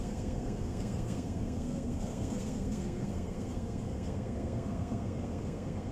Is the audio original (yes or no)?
no